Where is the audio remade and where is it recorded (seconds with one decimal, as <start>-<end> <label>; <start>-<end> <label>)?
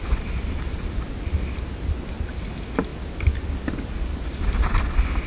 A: 0.0-5.3 recorded